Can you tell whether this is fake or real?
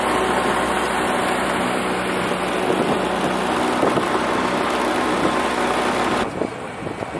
real